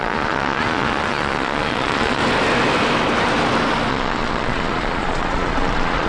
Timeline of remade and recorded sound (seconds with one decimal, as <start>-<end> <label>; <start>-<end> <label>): 0.0-2.2 remade; 2.2-3.9 recorded; 3.9-6.1 remade